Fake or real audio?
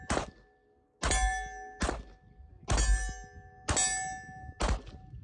real